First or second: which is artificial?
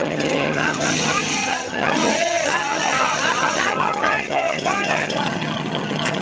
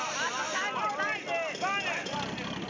first